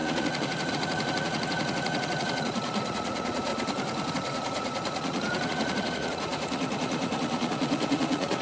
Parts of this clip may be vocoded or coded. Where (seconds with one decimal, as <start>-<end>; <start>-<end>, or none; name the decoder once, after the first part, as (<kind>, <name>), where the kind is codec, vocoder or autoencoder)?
0.0-3.5 (vocoder, Vocos); 4.1-8.4